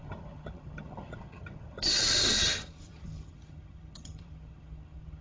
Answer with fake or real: fake